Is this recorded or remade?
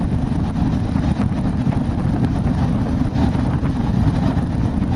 recorded